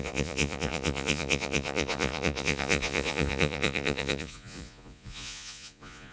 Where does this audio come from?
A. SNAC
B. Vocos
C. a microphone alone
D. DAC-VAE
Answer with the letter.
B